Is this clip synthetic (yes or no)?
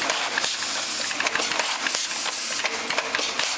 no